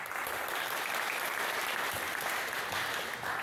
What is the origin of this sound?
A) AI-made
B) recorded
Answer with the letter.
B